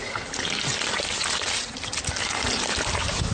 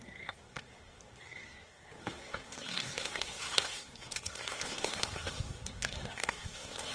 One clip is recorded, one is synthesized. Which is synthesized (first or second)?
second